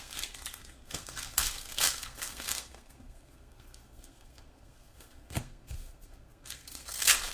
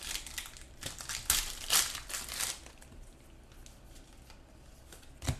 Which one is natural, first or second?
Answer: second